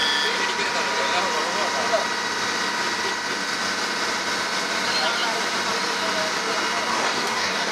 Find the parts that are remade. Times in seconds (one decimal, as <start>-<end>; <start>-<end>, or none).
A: 6.9-7.7